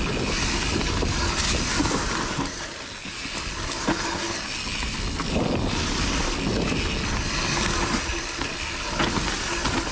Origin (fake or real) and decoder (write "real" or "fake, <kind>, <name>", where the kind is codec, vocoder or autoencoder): real